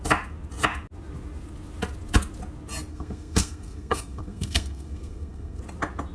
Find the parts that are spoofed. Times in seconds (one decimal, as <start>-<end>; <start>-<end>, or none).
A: 2.9-5.6